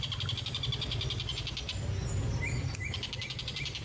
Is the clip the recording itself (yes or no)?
yes